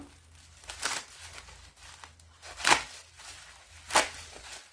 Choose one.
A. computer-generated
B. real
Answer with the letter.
B